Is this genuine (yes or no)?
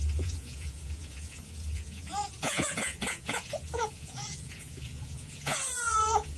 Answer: no